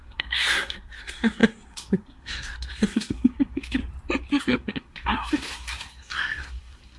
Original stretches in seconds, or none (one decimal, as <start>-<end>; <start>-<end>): 3.8-4.4